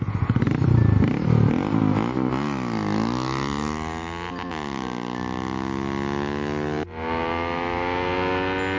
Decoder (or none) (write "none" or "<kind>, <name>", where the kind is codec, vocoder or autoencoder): none